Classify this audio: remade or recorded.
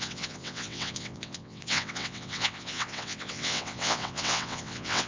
remade